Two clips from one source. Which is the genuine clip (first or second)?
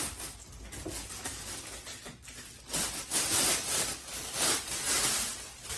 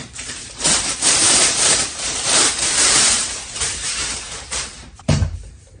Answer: first